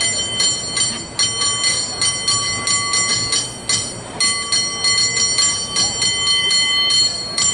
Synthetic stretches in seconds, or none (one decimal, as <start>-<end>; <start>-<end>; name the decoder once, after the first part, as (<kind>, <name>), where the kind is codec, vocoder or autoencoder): 6.4-7.5 (vocoder, BigVGAN v2)